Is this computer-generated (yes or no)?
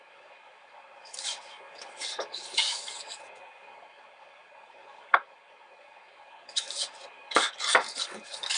yes